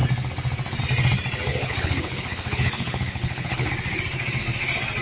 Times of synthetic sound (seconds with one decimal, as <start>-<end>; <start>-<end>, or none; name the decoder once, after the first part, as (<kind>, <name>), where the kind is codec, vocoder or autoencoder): 1.5-3.7 (codec, HILCodec)